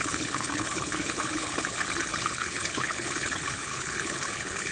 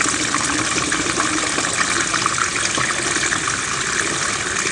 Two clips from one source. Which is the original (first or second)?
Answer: second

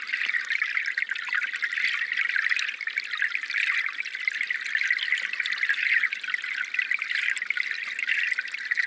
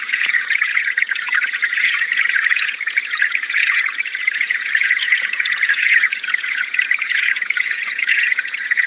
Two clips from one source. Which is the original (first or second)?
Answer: first